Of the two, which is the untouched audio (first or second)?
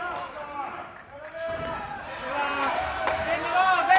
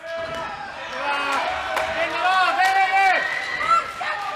second